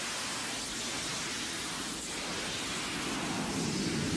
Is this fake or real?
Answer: real